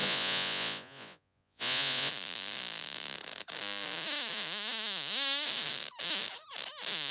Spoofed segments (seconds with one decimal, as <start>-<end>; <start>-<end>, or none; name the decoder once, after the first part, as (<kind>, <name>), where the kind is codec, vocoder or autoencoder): 0.0-2.1 (vocoder, Vocos)